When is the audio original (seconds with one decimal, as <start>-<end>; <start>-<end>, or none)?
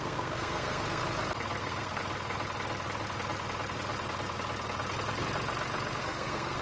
1.0-1.6; 2.0-6.0